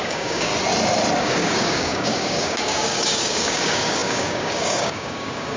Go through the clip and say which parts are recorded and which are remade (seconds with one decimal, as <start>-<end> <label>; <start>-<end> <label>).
0.0-0.5 remade; 0.5-1.2 recorded; 1.2-5.6 remade